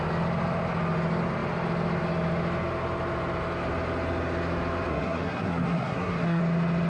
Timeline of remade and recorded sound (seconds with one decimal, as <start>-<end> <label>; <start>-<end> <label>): 0.0-4.9 recorded; 4.9-6.4 remade; 6.4-6.9 recorded